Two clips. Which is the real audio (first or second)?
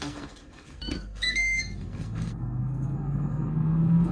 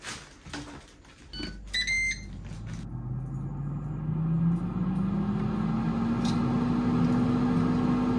second